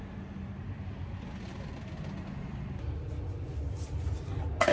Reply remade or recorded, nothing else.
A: recorded